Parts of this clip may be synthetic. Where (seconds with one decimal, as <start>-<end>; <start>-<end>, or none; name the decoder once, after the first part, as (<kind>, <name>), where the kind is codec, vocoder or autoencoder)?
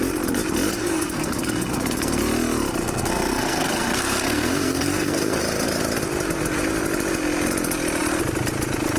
0.8-2.2 (codec, SNAC); 2.8-5.4